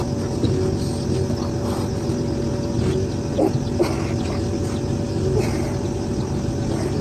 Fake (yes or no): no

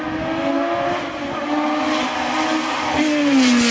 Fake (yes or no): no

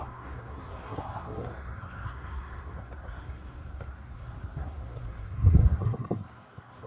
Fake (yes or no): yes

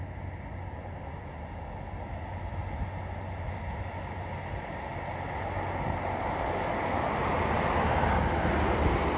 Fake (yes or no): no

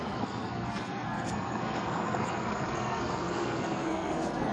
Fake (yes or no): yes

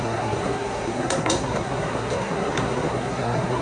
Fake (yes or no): yes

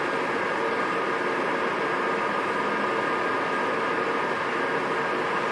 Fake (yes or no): no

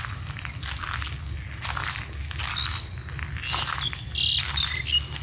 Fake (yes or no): no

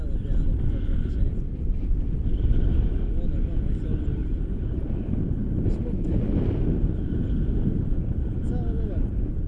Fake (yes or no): no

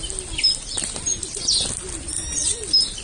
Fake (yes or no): no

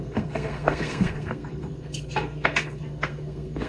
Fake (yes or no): yes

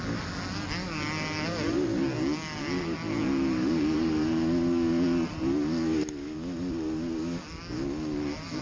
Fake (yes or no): no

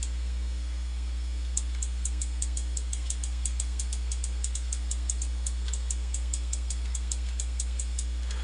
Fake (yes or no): yes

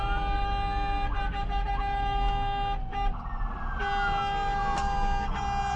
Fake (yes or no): no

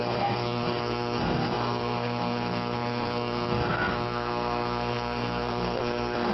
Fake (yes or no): yes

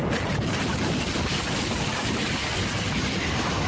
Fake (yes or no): no